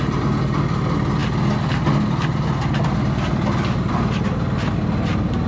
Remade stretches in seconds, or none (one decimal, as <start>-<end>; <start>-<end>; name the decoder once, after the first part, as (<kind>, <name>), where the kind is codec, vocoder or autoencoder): none